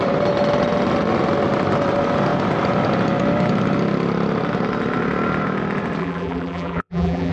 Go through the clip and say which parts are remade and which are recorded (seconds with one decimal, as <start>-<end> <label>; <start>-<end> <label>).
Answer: 0.0-6.0 recorded; 6.0-7.3 remade